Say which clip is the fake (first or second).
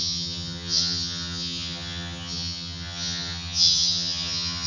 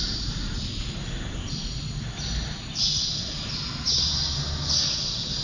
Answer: first